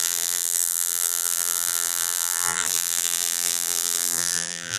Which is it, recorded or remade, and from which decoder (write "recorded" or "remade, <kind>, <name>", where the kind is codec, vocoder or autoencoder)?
remade, vocoder, BigVGAN v2